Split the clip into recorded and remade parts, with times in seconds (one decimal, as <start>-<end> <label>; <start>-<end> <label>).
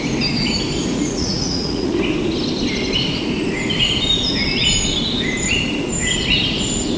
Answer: 0.0-0.9 recorded; 0.9-1.9 remade; 1.9-7.0 recorded